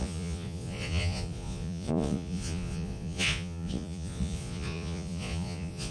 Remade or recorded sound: remade